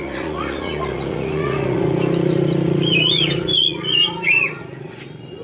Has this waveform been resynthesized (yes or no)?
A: yes